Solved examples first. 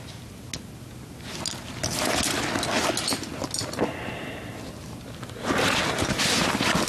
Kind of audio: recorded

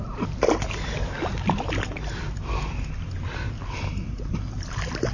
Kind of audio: remade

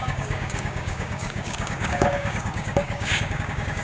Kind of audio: remade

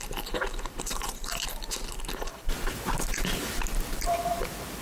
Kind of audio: remade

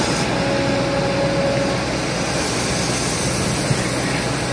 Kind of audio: recorded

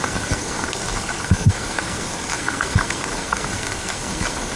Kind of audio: remade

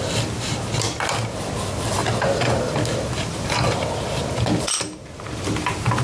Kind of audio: recorded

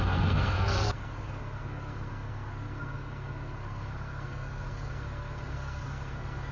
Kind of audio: remade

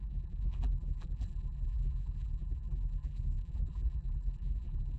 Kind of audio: remade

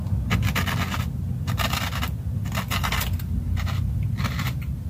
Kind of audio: recorded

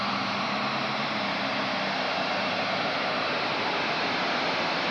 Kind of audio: recorded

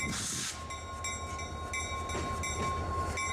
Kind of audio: recorded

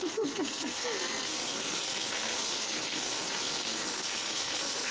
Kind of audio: remade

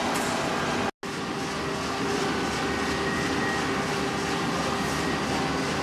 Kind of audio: recorded